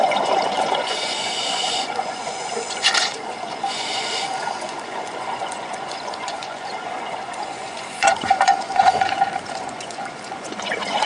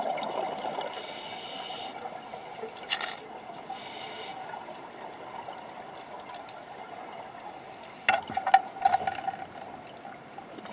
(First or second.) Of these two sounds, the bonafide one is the second